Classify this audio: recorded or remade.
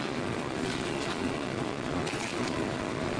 remade